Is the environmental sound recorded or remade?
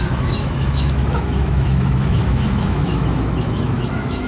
remade